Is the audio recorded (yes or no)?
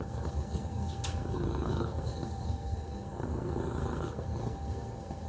no